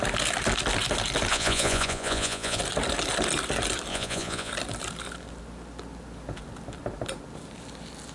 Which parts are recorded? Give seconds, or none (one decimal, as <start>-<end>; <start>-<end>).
0.0-1.3; 2.6-3.9; 4.5-8.1